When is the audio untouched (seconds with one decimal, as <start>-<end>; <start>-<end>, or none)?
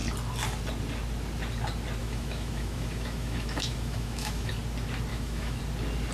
0.0-2.0; 4.5-5.1; 5.6-6.1